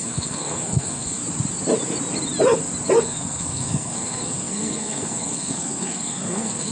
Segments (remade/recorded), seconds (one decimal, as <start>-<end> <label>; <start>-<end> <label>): 0.0-1.2 remade; 1.2-3.0 recorded; 3.0-6.7 remade